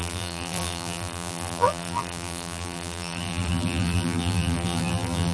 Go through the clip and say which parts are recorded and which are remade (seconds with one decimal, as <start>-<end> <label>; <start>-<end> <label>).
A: 0.0-5.3 remade